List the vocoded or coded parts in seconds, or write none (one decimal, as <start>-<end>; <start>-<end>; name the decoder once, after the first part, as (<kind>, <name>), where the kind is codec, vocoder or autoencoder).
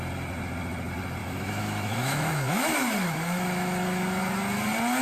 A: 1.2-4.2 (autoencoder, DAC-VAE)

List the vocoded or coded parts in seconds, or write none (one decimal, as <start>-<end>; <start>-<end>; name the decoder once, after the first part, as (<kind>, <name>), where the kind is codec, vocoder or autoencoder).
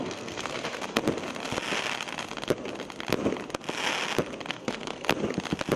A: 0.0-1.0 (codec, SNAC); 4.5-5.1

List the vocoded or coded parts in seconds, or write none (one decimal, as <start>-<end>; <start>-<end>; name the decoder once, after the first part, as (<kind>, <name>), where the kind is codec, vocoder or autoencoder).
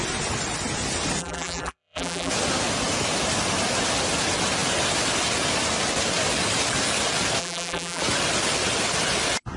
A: 1.2-2.3 (vocoder, BigVGAN v2); 7.4-8.0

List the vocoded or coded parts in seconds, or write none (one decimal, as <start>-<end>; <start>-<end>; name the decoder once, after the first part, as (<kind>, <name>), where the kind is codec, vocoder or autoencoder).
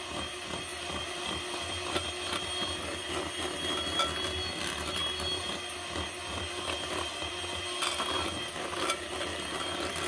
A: none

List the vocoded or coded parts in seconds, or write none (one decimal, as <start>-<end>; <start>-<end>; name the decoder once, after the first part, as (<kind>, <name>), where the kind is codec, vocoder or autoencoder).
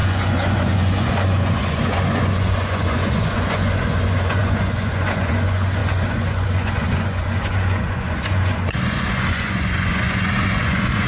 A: 0.0-11.1 (vocoder, Vocos)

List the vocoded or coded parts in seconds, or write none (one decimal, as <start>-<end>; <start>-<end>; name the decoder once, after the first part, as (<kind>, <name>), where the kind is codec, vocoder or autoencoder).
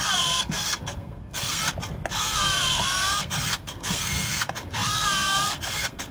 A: 0.0-1.6 (codec, SNAC); 2.1-6.1